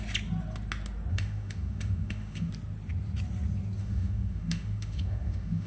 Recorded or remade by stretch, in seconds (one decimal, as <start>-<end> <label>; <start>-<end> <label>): 0.0-1.1 recorded; 1.1-2.5 remade; 2.5-3.8 recorded; 3.8-5.7 remade